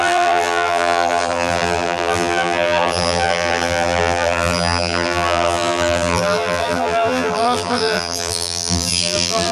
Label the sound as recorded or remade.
remade